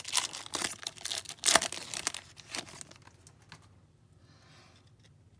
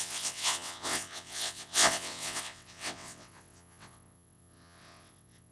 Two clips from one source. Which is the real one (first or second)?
first